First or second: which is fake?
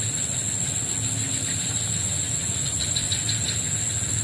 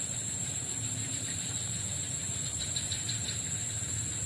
second